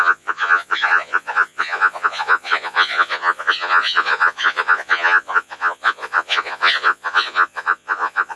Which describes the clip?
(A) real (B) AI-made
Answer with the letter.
B